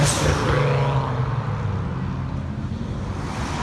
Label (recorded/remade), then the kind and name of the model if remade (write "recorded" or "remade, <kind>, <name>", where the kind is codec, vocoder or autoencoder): recorded